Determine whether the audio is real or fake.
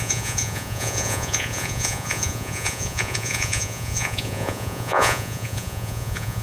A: fake